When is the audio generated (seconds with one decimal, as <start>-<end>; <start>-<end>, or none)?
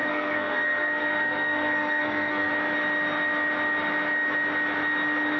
0.0-2.5